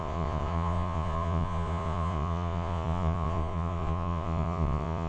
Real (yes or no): no